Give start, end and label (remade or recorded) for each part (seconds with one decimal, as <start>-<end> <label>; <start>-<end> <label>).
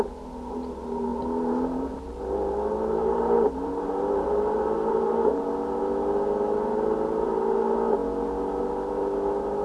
0.0-1.1 recorded; 1.1-5.4 remade; 5.4-9.6 recorded